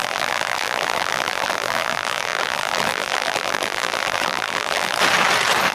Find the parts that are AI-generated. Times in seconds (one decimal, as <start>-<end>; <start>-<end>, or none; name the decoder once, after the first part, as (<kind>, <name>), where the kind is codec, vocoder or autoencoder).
0.0-5.0 (vocoder, BigVGAN v2)